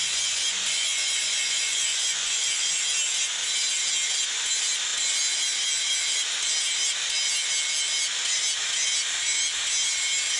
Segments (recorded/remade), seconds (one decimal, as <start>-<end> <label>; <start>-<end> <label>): 0.0-2.8 remade; 2.8-10.4 recorded